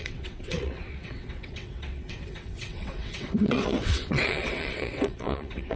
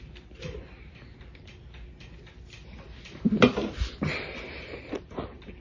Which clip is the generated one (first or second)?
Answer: first